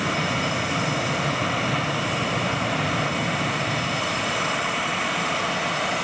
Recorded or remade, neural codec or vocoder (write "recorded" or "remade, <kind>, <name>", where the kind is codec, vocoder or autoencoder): recorded